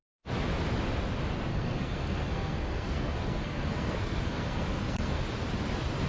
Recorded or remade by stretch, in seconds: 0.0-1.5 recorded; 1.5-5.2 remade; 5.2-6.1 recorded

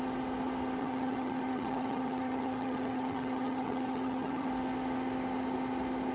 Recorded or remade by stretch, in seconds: 0.0-0.8 recorded; 0.8-4.5 remade; 4.5-6.1 recorded

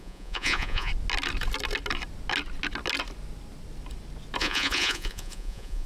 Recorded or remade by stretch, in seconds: 0.0-0.9 remade; 0.9-4.4 recorded; 4.4-5.9 remade

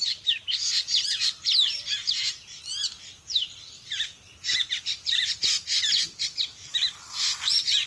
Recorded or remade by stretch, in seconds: 0.0-7.9 remade

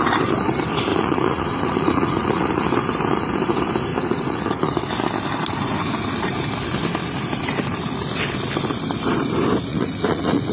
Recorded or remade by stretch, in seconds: 0.0-0.9 recorded; 0.9-2.6 remade; 2.6-3.9 recorded; 3.9-4.8 remade; 4.8-9.7 recorded; 9.7-10.5 remade